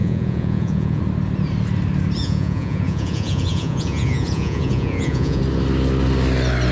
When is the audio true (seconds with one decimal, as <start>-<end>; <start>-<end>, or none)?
1.0-2.2; 5.4-6.7

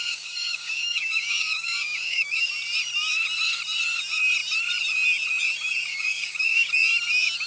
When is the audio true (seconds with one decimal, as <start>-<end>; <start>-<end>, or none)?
2.5-5.9; 6.7-7.5

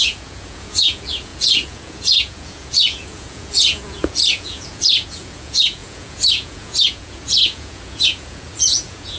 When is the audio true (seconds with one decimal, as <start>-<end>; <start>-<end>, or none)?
none

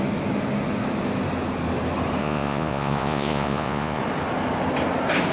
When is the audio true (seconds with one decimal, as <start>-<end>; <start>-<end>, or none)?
0.0-2.2; 4.0-5.3

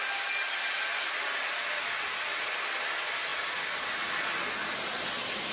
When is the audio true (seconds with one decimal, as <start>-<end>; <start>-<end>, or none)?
0.0-5.5